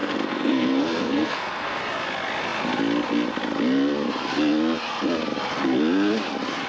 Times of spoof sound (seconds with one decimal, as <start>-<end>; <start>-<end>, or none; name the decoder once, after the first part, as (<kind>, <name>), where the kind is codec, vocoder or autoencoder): 0.0-1.8 (codec, SNAC)